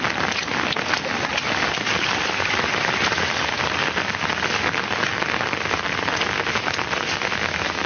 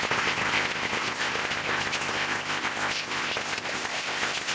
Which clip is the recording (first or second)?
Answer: first